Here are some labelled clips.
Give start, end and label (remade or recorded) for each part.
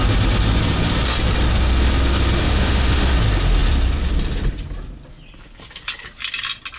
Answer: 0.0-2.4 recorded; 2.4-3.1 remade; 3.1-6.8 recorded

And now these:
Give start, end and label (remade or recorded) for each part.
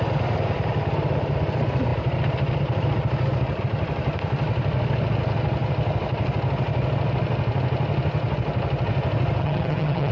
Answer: 0.0-9.4 recorded; 9.4-10.1 remade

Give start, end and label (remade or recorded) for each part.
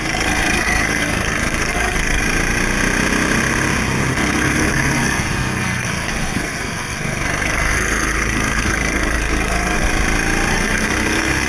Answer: 0.0-2.2 remade; 2.2-4.1 recorded; 4.1-9.9 remade; 9.9-10.5 recorded; 10.5-11.5 remade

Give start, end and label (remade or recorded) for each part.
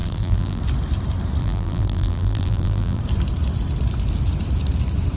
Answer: 0.0-0.6 remade; 0.6-1.4 recorded; 1.4-3.0 remade; 3.0-5.2 recorded